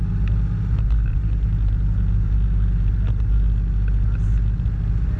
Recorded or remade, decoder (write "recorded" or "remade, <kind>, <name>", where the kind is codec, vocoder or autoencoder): recorded